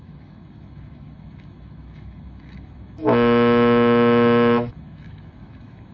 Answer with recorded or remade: remade